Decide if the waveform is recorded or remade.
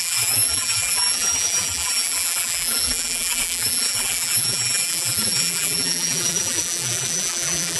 remade